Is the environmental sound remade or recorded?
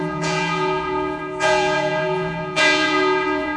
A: remade